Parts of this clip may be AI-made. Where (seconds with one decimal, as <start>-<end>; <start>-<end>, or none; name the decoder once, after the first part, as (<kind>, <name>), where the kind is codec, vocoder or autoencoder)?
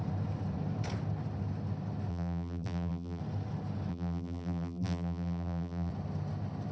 2.1-3.2 (vocoder, BigVGAN v2); 3.9-5.9